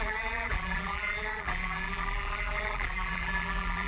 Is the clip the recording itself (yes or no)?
no